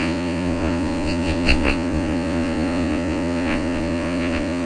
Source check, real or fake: fake